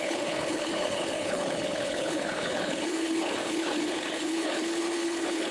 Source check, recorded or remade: remade